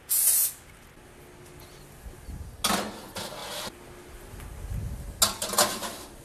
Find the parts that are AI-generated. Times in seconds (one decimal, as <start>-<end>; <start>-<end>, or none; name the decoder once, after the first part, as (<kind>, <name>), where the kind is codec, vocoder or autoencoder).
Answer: 3.4-4.7 (vocoder, BigVGAN v2)